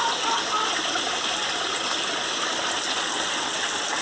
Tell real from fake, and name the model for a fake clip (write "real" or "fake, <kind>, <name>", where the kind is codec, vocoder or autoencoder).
real